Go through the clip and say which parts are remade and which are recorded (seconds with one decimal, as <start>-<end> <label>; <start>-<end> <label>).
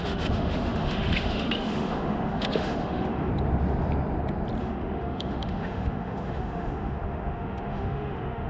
0.0-3.3 remade; 3.3-4.6 recorded; 4.6-8.5 remade